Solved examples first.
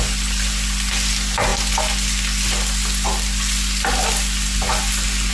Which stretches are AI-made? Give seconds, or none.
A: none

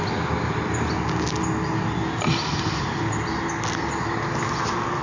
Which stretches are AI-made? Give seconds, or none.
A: 2.3-3.0 (vocoder, BigVGAN v2)

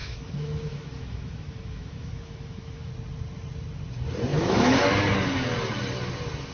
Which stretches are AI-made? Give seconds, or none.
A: 0.0-2.9 (autoencoder, DAC-VAE); 4.3-4.8

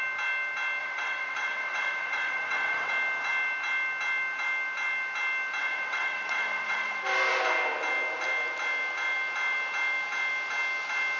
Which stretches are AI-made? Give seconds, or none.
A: 0.8-2.9 (vocoder, WaveNeXt); 5.6-7.0

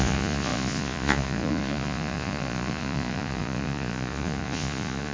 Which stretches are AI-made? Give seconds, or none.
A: 0.0-5.1 (vocoder, Vocos)